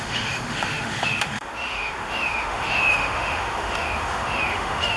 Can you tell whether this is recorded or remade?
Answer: remade